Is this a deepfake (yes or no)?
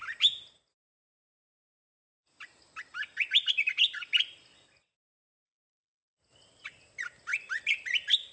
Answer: no